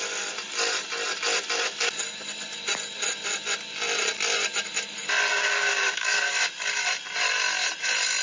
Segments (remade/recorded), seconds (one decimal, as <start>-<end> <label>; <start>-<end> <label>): 0.0-5.3 recorded; 5.3-6.3 remade; 6.3-8.2 recorded